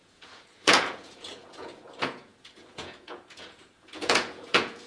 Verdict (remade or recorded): remade